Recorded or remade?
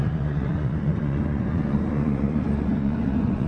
remade